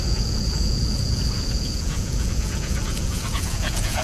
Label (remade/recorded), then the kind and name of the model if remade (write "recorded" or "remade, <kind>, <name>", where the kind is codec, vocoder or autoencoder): remade, vocoder, Vocos